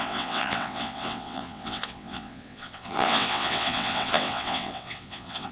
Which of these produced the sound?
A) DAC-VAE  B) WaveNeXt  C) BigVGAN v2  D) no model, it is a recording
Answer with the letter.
B